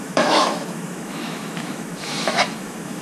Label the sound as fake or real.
fake